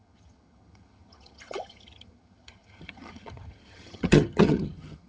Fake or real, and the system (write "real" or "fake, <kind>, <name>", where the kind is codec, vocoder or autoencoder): fake, vocoder, HiFi-GAN